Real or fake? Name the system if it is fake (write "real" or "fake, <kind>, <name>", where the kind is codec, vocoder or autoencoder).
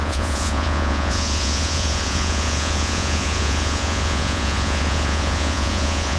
fake, vocoder, Vocos